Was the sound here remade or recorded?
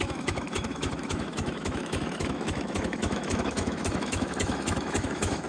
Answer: remade